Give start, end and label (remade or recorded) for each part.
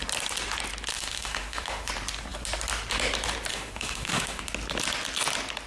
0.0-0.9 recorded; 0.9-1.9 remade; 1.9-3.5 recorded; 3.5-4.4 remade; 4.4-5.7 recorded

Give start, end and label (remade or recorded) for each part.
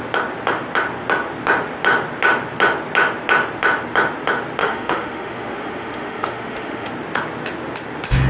0.0-4.6 recorded; 4.6-6.9 remade; 6.9-8.3 recorded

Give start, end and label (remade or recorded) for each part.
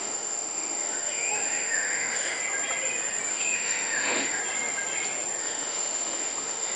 0.0-2.4 remade; 2.4-3.3 recorded; 3.3-4.4 remade; 4.4-5.4 recorded; 5.4-6.8 remade